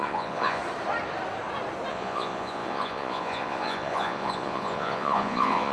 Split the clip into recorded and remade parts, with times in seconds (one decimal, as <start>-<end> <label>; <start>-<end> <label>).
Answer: 0.0-0.6 remade; 0.6-1.9 recorded; 1.9-5.7 remade